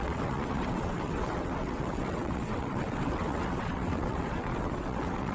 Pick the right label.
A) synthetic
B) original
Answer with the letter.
A